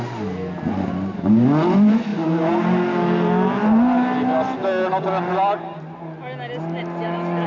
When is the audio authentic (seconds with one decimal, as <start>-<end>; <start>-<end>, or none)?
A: 0.0-7.5